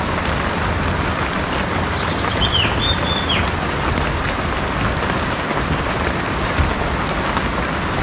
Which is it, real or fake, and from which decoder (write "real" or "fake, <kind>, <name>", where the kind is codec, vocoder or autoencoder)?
real